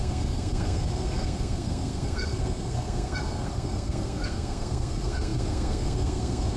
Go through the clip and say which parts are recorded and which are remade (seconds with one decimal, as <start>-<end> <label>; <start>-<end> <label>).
0.0-6.6 remade